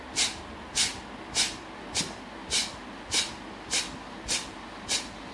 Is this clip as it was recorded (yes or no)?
no